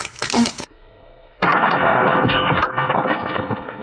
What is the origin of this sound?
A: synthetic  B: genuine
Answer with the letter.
A